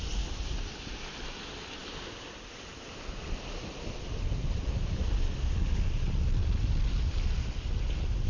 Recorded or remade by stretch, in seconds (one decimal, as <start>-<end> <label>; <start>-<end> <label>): 0.0-8.3 recorded